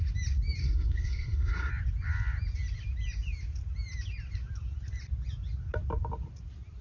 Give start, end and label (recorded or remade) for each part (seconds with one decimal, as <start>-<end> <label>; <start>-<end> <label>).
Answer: 0.0-0.6 recorded; 0.6-1.7 remade; 1.7-6.8 recorded